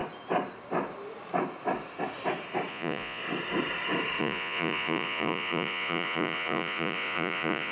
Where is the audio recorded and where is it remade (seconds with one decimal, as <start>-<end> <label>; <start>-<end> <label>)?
0.0-2.7 recorded; 2.7-3.2 remade; 3.2-4.2 recorded; 4.2-7.7 remade

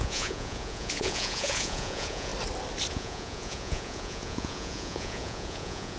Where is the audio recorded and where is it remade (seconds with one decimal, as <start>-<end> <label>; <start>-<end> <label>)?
0.0-2.3 remade; 2.3-2.9 recorded; 2.9-6.0 remade

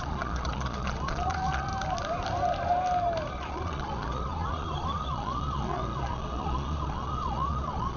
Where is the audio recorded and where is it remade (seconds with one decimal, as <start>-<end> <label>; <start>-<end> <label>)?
0.0-1.7 remade; 1.7-3.3 recorded; 3.3-8.0 remade

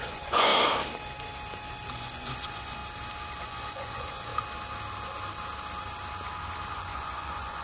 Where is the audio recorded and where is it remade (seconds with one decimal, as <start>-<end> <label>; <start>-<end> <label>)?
0.0-0.5 remade; 0.5-1.9 recorded; 1.9-2.8 remade; 2.8-3.4 recorded; 3.4-4.3 remade; 4.3-6.7 recorded; 6.7-7.6 remade

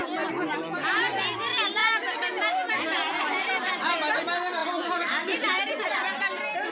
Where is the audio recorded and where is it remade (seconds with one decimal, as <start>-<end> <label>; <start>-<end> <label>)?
0.0-6.7 recorded

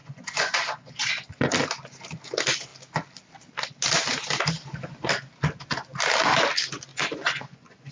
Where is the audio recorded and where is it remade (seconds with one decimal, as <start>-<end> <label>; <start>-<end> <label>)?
0.0-1.1 remade; 1.1-6.9 recorded; 6.9-7.9 remade

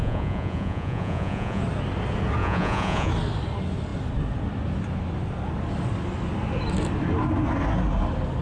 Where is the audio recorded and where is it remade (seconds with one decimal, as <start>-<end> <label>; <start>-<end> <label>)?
0.0-1.6 remade; 1.6-2.4 recorded; 2.4-3.1 remade; 3.1-8.4 recorded